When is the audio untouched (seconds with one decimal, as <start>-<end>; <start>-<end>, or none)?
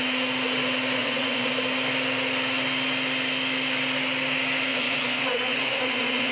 0.0-1.0; 1.5-4.7